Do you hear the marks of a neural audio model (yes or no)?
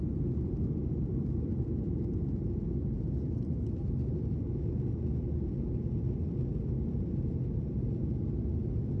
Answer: no